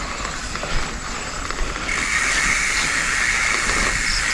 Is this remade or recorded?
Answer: recorded